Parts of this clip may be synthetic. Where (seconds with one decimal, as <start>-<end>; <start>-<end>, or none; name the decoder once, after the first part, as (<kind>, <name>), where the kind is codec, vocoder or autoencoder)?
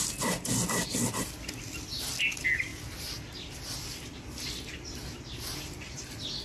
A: none